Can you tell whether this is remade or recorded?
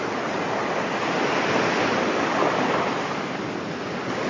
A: recorded